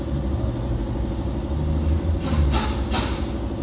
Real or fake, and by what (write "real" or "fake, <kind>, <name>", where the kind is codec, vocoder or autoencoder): real